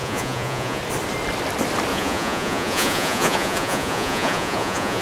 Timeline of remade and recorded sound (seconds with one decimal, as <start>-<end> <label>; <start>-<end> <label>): 0.0-0.8 remade; 0.8-1.9 recorded; 1.9-5.0 remade

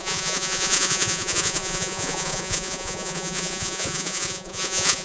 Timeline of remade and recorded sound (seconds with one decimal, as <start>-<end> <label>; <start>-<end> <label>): 0.0-5.0 remade

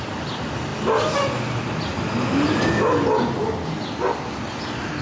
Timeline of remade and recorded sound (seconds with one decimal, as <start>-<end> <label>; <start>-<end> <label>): 0.0-5.0 recorded

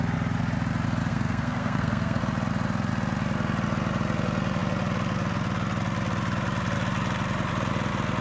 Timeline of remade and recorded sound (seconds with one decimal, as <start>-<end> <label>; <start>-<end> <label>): 0.0-1.1 recorded; 1.1-2.2 remade; 2.2-8.2 recorded

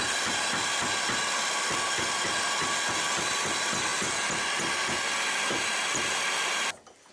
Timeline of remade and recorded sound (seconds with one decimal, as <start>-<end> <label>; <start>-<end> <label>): 0.0-7.1 recorded